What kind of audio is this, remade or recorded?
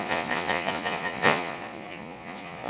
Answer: remade